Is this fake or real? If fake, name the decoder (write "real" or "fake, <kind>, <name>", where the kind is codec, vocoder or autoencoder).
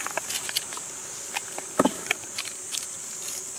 real